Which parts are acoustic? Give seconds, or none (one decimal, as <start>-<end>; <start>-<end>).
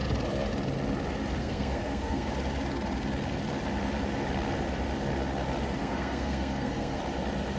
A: 0.0-1.4; 2.3-5.8; 7.0-7.6